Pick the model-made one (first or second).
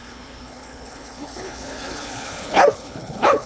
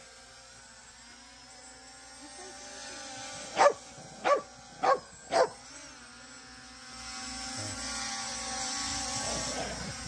first